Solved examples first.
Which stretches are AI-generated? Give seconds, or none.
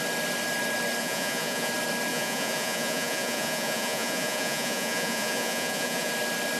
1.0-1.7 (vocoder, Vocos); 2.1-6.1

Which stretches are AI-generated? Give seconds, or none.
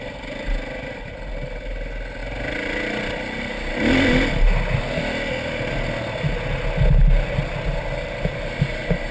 none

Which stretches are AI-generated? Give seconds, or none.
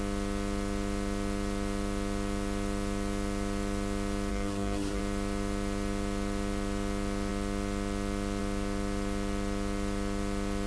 4.3-5.0 (codec, SNAC)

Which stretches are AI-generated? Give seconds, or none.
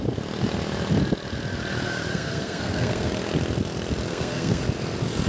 2.1-3.1 (codec, SNAC); 4.1-4.6